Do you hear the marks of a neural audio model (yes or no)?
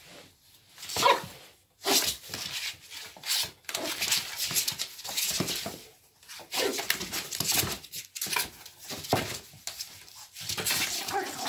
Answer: no